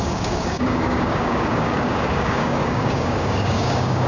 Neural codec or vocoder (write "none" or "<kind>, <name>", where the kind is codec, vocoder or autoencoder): codec, DAC